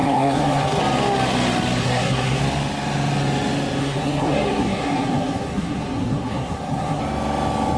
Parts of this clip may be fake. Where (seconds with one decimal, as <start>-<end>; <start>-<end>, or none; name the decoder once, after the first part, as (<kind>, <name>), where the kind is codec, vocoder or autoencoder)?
0.0-0.8 (codec, SNAC); 1.8-2.4; 3.8-7.0